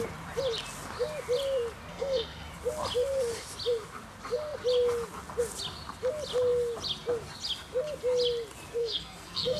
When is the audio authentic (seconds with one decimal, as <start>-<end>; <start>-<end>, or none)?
0.0-1.9; 2.5-8.8